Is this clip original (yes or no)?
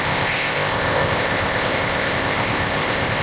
no